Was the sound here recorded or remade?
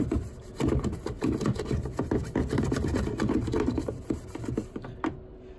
recorded